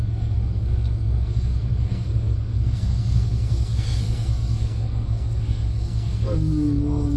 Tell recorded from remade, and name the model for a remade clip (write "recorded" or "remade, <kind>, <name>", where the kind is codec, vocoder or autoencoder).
remade, codec, SNAC